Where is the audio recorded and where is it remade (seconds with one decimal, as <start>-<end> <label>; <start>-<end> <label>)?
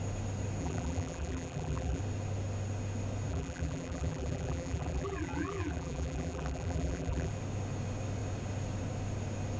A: 0.0-0.6 recorded; 0.6-2.0 remade; 2.0-3.3 recorded; 3.3-7.3 remade; 7.3-9.6 recorded